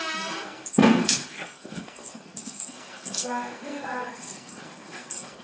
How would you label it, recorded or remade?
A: remade